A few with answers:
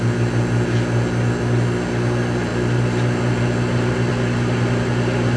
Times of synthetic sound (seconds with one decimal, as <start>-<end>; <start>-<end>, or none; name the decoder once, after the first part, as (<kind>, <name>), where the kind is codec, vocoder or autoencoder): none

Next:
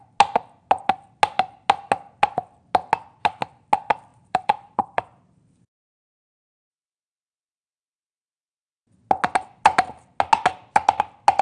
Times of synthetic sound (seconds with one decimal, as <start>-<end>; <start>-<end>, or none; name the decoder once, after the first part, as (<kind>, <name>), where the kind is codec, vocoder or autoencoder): 4.1-6.7 (vocoder, BigVGAN v2)

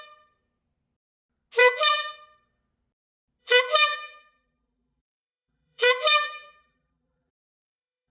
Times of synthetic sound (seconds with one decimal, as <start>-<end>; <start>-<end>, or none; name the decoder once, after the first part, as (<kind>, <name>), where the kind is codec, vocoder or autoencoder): 1.6-2.1 (vocoder, BigVGAN v2); 3.4-8.1

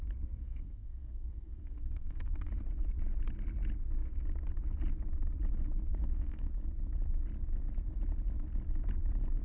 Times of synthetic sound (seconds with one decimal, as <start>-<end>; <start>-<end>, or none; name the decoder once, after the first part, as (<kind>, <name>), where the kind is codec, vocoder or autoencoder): 0.4-2.5 (codec, SNAC); 5.9-6.5

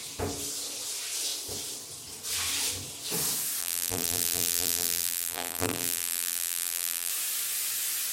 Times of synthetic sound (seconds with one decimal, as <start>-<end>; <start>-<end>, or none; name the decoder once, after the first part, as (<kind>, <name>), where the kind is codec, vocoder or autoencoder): 3.6-7.1 (vocoder, BigVGAN v2)

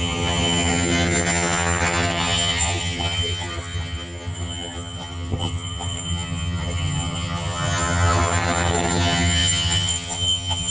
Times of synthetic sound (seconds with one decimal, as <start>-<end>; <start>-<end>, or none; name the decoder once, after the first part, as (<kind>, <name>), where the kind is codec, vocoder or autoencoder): 0.0-10.7 (vocoder, HiFi-GAN)